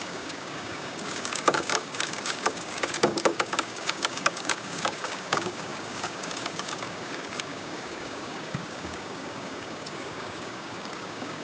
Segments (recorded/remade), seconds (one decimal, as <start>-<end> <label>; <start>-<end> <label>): 0.0-11.4 remade